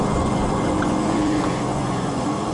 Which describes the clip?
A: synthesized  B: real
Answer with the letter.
A